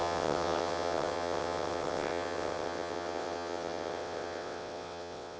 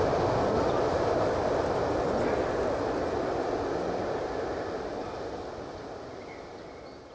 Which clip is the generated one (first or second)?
first